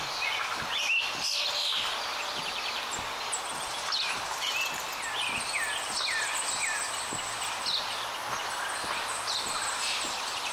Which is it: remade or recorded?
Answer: recorded